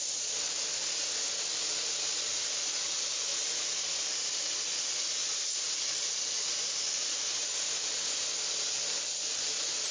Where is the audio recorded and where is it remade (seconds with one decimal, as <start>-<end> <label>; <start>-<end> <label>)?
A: 0.0-9.9 recorded